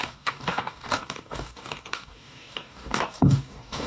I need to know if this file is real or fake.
fake